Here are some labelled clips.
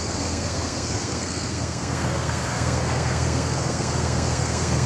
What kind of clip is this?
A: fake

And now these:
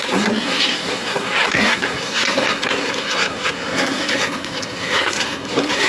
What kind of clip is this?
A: fake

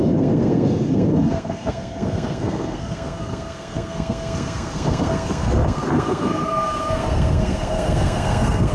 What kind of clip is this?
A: fake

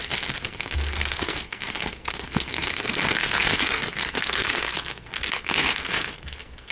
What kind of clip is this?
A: fake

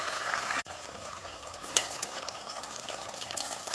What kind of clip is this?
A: fake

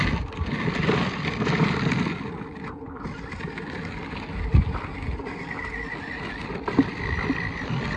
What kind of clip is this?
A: real